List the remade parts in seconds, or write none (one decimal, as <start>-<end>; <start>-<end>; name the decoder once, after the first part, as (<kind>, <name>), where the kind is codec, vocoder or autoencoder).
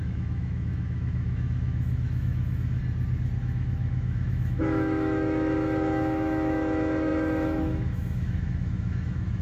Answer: 0.0-2.8 (autoencoder, DAC-VAE); 3.4-9.4